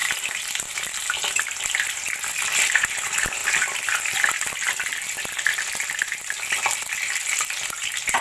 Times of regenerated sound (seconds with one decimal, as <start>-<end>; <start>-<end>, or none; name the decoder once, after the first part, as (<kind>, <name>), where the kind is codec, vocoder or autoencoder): 0.0-2.5 (vocoder, BigVGAN v2); 3.4-5.0